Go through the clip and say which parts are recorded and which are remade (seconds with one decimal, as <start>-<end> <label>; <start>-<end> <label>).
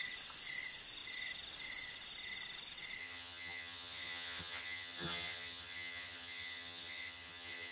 0.0-3.0 recorded; 3.0-7.7 remade